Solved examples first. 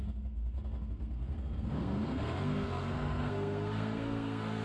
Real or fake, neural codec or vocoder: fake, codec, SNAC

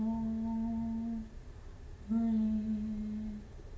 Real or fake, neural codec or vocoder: real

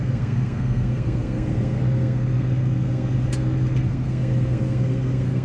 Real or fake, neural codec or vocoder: fake, codec, SNAC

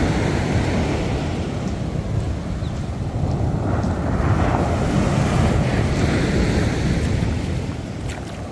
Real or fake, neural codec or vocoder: real